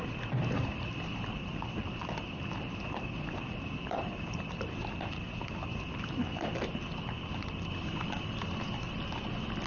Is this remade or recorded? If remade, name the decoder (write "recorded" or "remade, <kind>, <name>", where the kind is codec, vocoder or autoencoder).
recorded